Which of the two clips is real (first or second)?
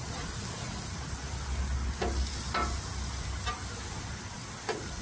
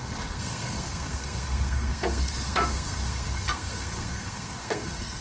first